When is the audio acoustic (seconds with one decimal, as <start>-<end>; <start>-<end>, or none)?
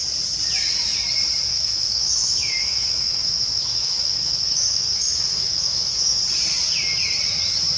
0.0-1.5; 6.2-7.8